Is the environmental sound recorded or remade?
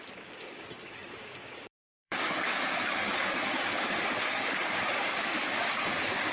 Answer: remade